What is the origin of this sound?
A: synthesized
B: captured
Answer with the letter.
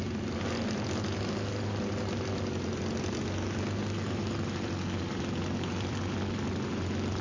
B